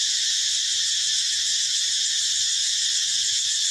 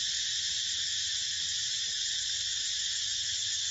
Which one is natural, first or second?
second